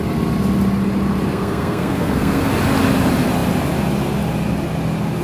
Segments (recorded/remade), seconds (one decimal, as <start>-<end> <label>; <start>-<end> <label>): 0.0-1.3 recorded; 1.3-2.5 remade; 2.5-5.2 recorded